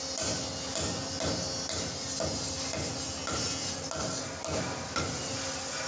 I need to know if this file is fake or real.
real